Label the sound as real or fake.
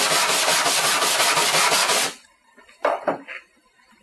real